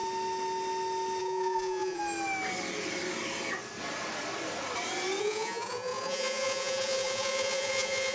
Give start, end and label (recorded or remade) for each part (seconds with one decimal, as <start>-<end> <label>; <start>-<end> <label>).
0.0-1.2 recorded; 1.2-2.0 remade; 2.0-5.2 recorded; 5.2-8.1 remade